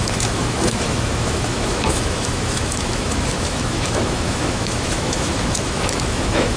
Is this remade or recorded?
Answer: remade